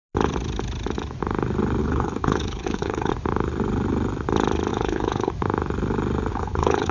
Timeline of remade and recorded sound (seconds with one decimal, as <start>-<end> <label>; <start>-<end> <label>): 0.0-1.8 recorded; 1.8-3.1 remade; 3.1-4.7 recorded; 4.7-5.3 remade; 5.3-6.3 recorded; 6.3-6.9 remade

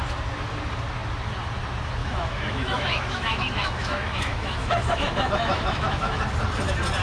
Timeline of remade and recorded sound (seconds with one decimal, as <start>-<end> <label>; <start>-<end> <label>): 0.0-2.0 recorded; 2.0-6.2 remade; 6.2-7.0 recorded

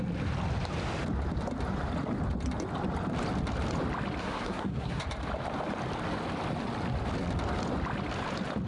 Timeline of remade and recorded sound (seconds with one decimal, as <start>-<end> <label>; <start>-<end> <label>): 0.0-4.2 recorded; 4.2-5.0 remade; 5.0-8.7 recorded

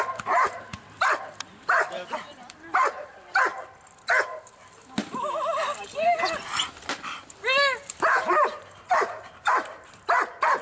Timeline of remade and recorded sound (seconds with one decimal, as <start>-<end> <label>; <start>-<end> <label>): 0.0-3.5 remade; 3.5-8.3 recorded; 8.3-10.6 remade

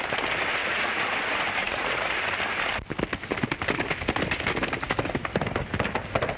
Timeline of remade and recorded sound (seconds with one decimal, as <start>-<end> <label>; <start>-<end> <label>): 0.0-0.6 recorded; 0.6-1.1 remade; 1.1-1.6 recorded; 1.6-2.3 remade; 2.3-6.4 recorded